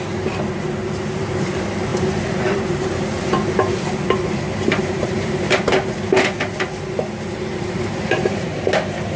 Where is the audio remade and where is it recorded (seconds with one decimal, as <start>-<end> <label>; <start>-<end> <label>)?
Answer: 0.0-1.9 recorded; 1.9-3.0 remade; 3.0-4.5 recorded; 4.5-5.6 remade; 5.6-7.5 recorded; 7.5-8.5 remade; 8.5-9.2 recorded